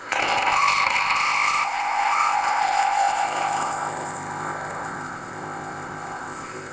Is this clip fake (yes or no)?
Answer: yes